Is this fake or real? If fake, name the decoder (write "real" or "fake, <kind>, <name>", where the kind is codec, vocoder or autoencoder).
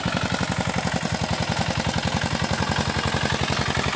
real